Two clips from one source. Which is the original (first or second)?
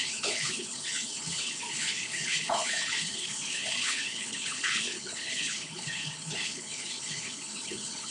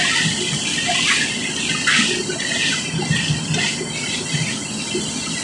second